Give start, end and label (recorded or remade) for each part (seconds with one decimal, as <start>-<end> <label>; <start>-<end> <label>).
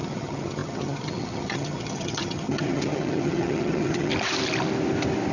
0.0-4.1 remade; 4.1-5.3 recorded